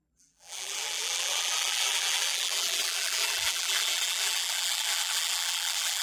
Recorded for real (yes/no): no